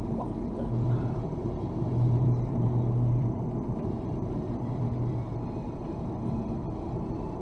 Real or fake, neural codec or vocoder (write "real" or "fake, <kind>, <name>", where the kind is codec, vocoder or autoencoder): fake, vocoder, BigVGAN v2